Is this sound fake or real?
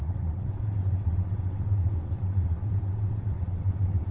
fake